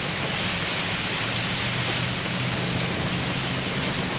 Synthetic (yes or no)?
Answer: no